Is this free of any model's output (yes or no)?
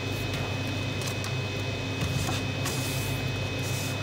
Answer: yes